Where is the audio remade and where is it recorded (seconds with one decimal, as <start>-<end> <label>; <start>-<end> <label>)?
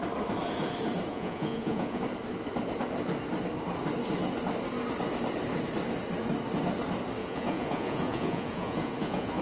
0.0-1.1 recorded; 1.1-2.0 remade; 2.0-7.2 recorded; 7.2-9.4 remade